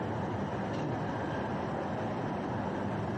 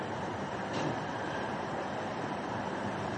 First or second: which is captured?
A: first